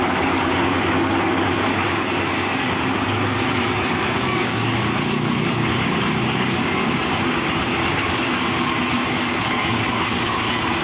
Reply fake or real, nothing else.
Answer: fake